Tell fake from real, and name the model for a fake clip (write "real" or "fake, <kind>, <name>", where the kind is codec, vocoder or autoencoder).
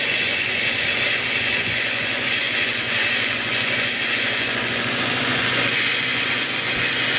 fake, vocoder, Vocos